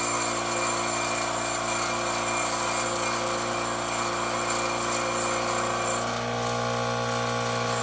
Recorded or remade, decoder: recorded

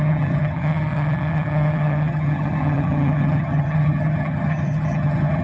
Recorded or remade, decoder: remade, vocoder, HiFi-GAN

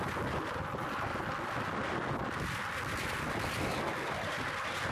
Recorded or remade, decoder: recorded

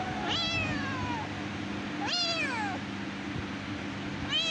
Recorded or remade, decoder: recorded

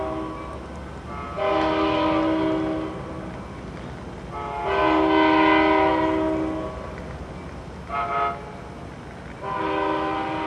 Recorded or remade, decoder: recorded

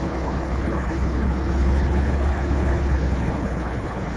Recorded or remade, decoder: remade, codec, HILCodec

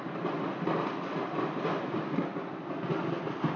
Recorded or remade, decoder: recorded